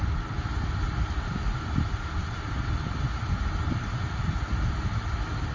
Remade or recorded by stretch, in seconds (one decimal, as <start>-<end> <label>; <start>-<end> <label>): 0.0-5.5 recorded